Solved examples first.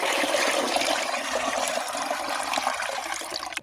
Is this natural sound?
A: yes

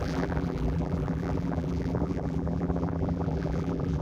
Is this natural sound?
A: no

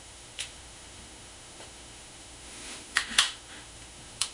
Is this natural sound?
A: no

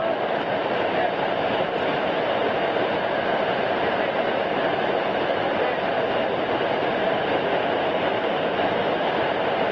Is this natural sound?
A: yes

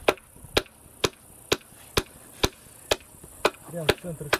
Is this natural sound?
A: yes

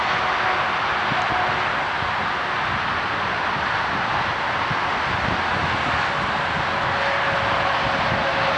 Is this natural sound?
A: yes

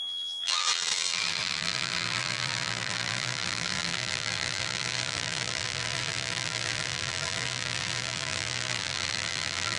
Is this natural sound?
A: no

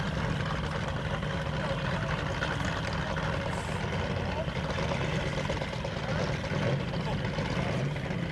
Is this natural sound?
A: yes